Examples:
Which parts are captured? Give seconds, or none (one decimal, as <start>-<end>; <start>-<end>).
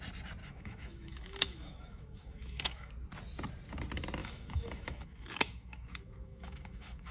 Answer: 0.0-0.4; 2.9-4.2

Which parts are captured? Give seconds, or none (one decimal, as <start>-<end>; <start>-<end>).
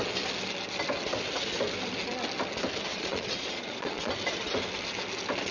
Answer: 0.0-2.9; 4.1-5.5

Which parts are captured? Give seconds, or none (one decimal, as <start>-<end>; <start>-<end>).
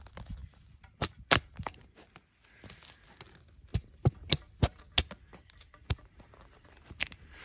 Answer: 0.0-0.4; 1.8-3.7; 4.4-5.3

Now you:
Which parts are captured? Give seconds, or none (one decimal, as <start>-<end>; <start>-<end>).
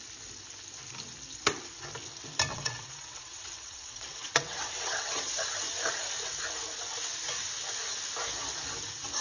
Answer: 0.0-2.5; 5.2-9.2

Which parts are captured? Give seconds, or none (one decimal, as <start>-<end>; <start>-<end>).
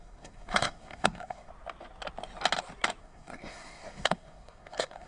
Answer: 1.5-3.0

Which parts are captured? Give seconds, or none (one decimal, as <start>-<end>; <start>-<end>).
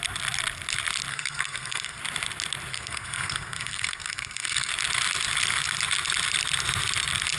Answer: 0.0-1.1; 2.0-2.7; 4.7-7.4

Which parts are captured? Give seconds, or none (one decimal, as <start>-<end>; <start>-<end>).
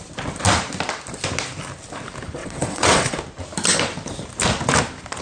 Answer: 0.0-2.4; 3.2-5.2